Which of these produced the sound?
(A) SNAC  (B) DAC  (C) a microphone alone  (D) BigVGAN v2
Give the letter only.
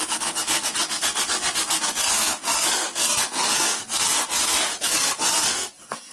A